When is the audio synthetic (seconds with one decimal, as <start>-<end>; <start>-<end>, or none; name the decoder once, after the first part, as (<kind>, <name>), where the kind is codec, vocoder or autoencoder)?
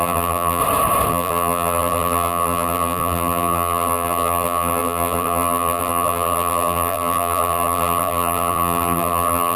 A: 0.0-0.6 (vocoder, BigVGAN v2); 1.1-9.6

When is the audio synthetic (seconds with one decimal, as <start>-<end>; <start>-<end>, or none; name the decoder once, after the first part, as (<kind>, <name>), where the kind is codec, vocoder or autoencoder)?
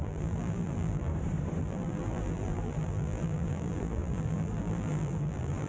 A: 0.0-1.1 (vocoder, BigVGAN v2); 1.6-5.7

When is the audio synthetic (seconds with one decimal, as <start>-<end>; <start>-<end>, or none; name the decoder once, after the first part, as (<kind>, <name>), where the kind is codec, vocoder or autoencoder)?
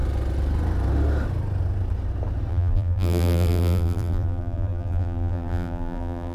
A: 2.5-6.3 (vocoder, BigVGAN v2)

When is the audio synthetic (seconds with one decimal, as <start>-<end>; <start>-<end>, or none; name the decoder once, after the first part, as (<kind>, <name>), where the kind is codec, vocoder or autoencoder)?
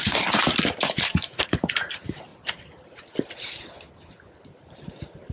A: 0.0-2.3 (vocoder, BigVGAN v2); 4.3-5.3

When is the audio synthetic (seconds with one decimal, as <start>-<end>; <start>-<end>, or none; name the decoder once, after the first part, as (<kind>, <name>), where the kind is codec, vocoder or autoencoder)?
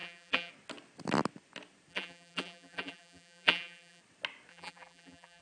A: 0.0-0.5 (vocoder, BigVGAN v2); 1.9-4.0; 4.5-5.4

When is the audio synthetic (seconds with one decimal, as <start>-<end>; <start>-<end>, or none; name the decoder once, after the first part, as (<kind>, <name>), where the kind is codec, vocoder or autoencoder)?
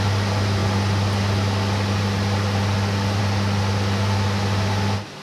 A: none